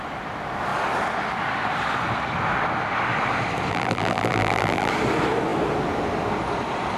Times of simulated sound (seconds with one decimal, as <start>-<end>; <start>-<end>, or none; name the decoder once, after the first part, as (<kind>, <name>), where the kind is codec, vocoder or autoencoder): 3.7-4.9 (vocoder, BigVGAN v2)